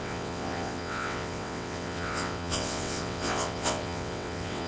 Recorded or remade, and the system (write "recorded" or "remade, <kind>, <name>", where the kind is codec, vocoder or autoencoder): remade, vocoder, WaveNeXt